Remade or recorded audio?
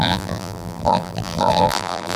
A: remade